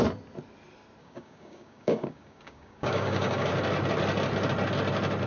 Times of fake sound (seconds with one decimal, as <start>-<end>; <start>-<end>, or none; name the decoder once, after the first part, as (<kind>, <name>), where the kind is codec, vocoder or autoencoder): 1.0-3.5 (codec, DAC)